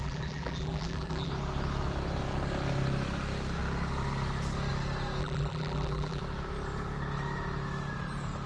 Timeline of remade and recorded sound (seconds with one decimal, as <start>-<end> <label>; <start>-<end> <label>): 0.0-1.3 remade; 1.3-5.2 recorded; 5.2-6.2 remade; 6.2-8.5 recorded